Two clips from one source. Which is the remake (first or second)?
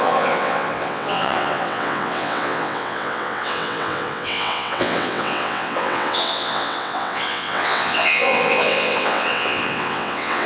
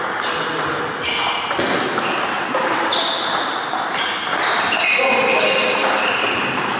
first